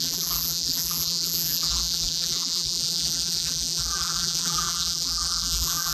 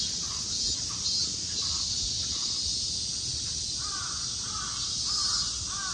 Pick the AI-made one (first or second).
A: first